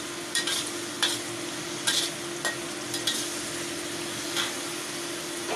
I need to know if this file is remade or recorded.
recorded